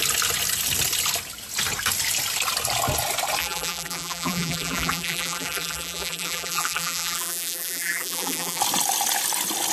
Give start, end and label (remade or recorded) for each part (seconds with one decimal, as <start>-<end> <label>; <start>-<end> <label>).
0.0-3.4 recorded; 3.4-8.6 remade; 8.6-9.7 recorded